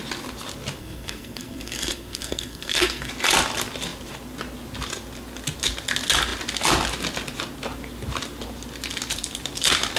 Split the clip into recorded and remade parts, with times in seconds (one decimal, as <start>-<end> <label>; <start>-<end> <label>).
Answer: 0.0-0.8 recorded; 0.8-3.1 remade; 3.1-10.0 recorded